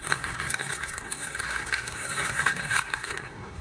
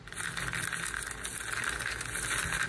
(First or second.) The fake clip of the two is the first